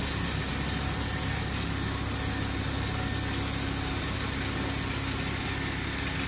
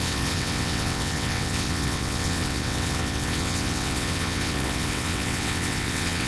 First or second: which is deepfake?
second